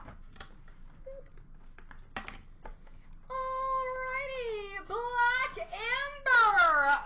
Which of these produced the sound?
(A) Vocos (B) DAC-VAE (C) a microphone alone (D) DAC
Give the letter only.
C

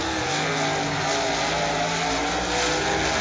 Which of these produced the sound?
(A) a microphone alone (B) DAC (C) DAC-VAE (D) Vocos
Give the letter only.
A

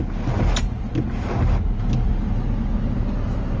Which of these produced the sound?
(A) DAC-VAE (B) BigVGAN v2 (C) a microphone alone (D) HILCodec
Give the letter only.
C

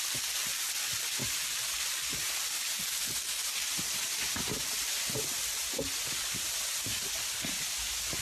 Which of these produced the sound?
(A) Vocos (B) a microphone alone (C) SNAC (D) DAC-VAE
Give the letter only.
B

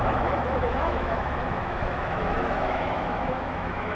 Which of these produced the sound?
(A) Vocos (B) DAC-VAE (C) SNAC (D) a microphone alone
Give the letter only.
B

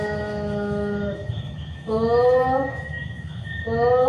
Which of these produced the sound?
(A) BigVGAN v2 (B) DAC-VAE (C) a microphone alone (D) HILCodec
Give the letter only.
B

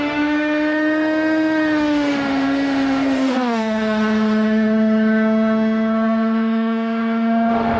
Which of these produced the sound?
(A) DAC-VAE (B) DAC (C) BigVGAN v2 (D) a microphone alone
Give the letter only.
A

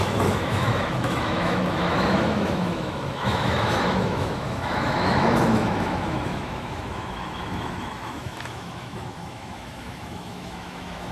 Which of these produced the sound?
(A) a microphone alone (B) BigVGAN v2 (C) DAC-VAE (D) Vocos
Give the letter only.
C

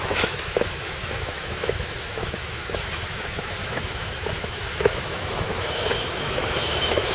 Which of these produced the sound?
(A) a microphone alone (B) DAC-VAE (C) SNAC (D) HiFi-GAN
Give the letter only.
B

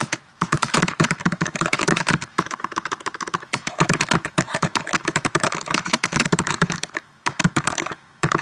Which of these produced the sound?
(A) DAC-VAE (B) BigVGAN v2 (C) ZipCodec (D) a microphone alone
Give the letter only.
A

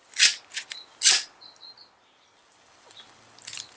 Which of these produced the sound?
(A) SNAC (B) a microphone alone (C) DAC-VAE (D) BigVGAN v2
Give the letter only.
B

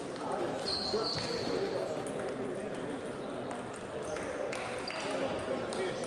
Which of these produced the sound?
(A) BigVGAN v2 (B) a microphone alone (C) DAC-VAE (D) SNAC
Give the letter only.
B